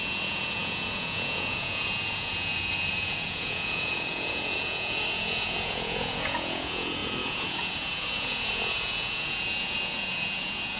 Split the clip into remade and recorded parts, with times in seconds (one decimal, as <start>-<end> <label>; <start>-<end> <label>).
0.0-10.8 remade